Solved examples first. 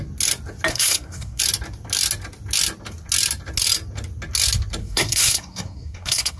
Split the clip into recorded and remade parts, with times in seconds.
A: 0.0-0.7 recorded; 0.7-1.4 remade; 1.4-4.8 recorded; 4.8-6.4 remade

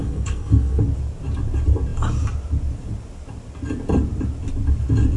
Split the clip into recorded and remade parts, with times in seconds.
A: 0.0-0.8 remade; 0.8-5.2 recorded

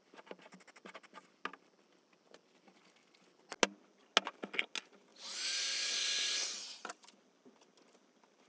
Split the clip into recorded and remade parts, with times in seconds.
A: 0.0-8.5 recorded

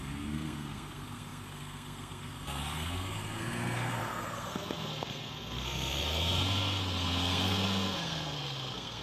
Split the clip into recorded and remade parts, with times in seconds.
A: 0.0-9.0 remade

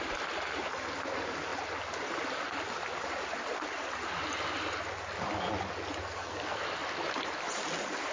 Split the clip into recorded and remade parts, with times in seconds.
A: 0.0-6.0 recorded; 6.0-6.6 remade; 6.6-8.1 recorded

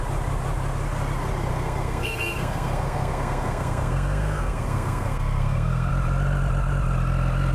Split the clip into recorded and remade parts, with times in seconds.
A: 0.0-1.5 recorded; 1.5-5.9 remade; 5.9-7.5 recorded